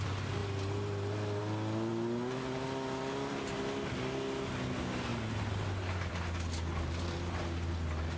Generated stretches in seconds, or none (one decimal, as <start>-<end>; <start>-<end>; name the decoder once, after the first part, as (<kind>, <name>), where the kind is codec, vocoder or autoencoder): none